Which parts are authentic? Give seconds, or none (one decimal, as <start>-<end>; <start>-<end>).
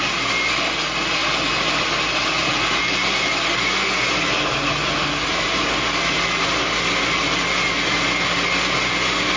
0.0-9.4